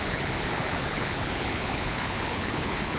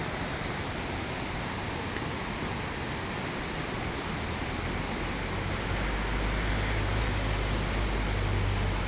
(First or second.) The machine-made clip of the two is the first